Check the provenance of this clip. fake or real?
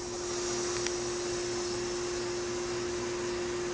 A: real